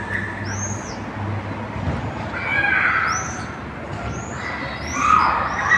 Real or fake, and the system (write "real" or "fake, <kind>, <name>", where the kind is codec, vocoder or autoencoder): real